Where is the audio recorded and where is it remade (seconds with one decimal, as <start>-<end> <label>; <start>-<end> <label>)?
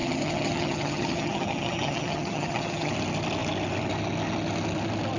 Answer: 0.0-2.9 remade; 2.9-5.2 recorded